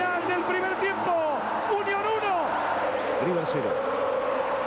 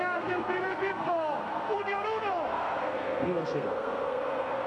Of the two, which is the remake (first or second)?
second